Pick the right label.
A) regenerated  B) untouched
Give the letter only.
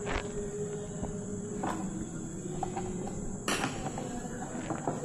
B